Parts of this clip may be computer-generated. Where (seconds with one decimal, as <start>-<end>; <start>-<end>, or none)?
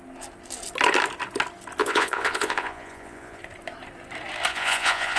1.8-3.4; 4.5-5.2